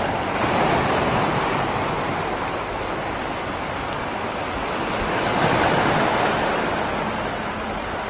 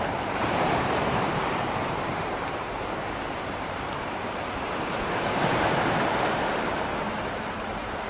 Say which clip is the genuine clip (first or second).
first